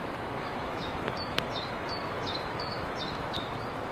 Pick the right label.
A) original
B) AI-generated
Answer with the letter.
B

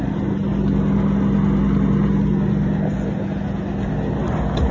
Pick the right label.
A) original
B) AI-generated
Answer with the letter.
A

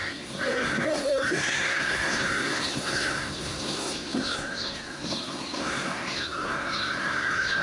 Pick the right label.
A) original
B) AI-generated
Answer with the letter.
B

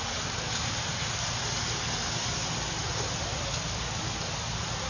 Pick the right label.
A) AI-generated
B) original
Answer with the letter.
B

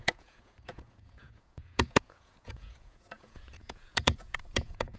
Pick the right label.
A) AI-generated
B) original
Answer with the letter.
A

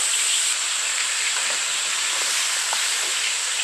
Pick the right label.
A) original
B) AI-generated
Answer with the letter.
B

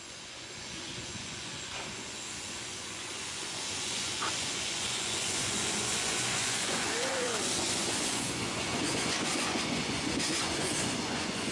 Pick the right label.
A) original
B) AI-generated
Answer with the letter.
B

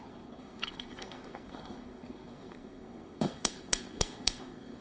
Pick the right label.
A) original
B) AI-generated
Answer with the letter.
B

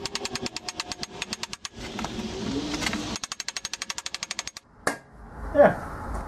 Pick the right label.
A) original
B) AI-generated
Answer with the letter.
A